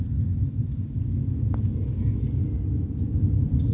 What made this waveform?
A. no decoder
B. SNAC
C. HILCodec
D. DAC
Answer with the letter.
A